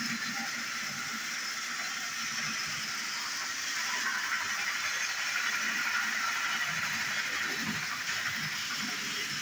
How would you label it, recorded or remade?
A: recorded